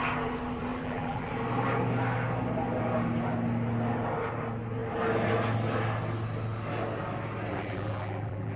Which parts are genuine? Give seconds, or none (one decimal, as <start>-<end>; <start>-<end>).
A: 0.0-0.7; 1.3-7.5